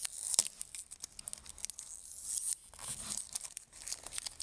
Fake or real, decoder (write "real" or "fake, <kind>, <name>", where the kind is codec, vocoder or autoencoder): real